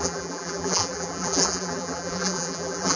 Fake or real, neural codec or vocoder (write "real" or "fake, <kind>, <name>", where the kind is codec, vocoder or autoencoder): fake, vocoder, BigVGAN v2